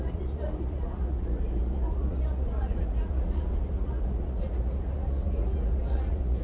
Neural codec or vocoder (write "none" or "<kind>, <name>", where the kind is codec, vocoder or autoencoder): vocoder, Vocos